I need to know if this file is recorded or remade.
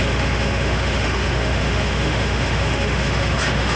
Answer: remade